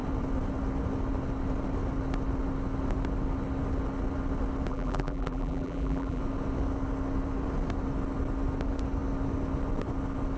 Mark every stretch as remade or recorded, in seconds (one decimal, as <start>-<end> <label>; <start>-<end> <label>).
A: 0.0-4.7 recorded; 4.7-6.2 remade; 6.2-10.4 recorded